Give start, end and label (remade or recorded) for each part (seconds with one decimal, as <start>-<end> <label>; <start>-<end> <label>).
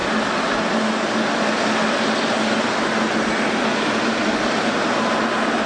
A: 0.0-5.7 recorded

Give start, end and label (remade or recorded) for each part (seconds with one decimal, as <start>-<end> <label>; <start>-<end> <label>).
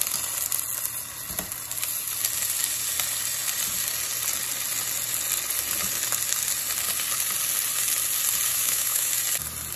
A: 0.0-8.5 recorded; 8.5-9.1 remade; 9.1-9.8 recorded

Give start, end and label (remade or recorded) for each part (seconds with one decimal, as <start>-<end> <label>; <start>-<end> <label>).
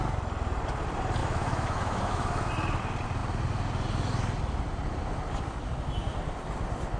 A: 0.0-1.2 recorded; 1.2-2.5 remade; 2.5-7.0 recorded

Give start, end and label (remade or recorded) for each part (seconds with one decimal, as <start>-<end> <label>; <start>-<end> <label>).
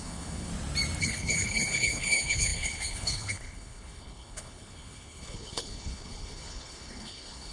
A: 0.0-0.5 remade; 0.5-1.0 recorded; 1.0-7.5 remade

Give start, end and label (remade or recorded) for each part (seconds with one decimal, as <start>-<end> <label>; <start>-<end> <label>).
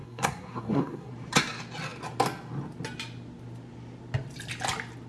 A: 0.0-1.1 remade; 1.1-5.1 recorded